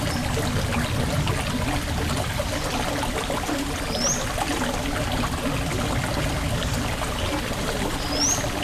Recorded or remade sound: recorded